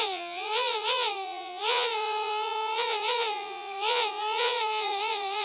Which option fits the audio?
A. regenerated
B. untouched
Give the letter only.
A